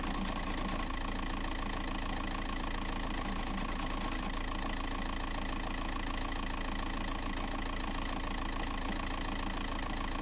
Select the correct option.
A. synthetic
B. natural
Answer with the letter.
B